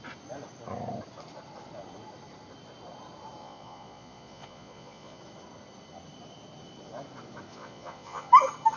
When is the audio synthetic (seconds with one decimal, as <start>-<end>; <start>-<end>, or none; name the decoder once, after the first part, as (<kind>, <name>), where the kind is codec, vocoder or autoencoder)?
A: 3.4-5.2 (vocoder, Vocos); 7.5-8.3